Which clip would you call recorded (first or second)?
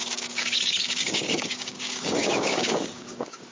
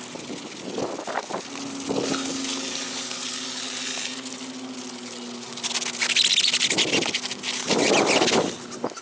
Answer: second